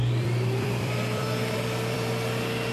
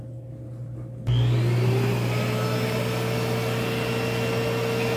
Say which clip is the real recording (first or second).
second